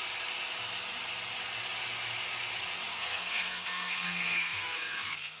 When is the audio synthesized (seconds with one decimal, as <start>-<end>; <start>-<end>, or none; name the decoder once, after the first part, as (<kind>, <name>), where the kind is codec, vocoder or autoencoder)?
2.9-5.4 (codec, SNAC)